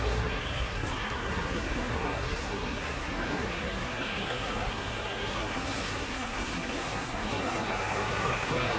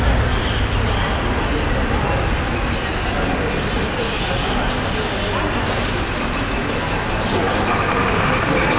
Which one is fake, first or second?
first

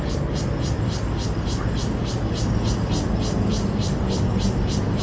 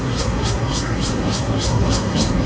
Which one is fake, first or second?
second